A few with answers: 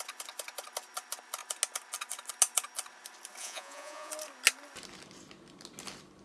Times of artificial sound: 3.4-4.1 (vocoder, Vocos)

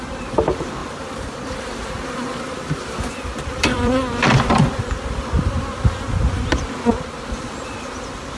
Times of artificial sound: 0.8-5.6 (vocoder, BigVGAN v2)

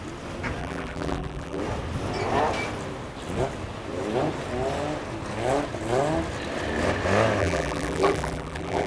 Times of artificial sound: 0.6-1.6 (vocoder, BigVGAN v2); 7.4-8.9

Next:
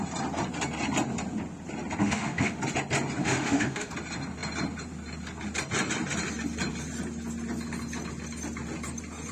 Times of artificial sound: 2.0-2.6 (autoencoder, DAC-VAE); 3.2-3.9

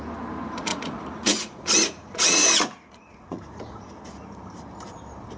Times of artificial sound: 0.7-3.9 (vocoder, Vocos)

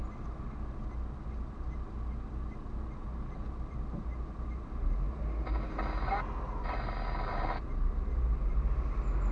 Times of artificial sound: none

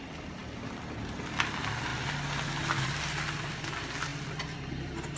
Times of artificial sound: none